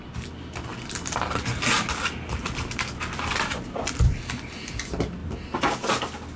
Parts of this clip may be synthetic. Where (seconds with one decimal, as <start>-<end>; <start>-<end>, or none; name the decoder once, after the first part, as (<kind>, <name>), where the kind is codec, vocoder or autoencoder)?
none